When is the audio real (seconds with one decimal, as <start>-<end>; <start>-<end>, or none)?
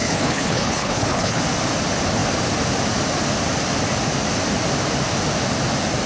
1.4-6.1